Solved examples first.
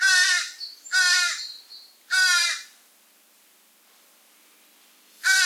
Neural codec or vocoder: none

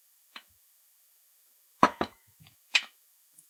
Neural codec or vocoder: autoencoder, DAC-VAE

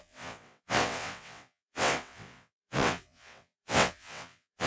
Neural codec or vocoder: vocoder, WaveNeXt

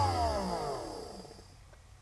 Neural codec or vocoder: vocoder, BigVGAN v2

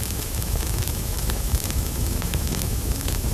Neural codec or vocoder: autoencoder, DAC-VAE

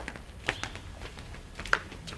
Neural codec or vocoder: none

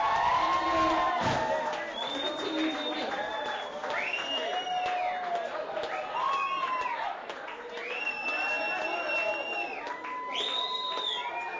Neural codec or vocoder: none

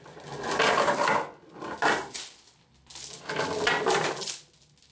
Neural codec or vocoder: none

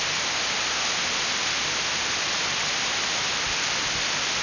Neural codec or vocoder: none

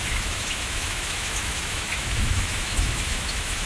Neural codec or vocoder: autoencoder, DAC-VAE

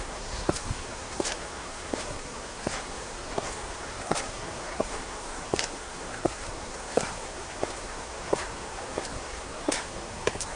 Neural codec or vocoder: codec, SNAC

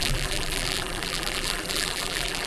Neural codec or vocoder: vocoder, BigVGAN v2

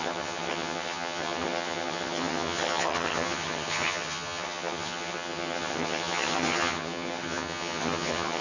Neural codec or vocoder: vocoder, HiFi-GAN